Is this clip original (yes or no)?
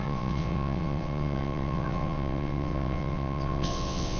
no